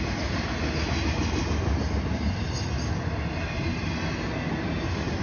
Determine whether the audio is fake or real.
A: real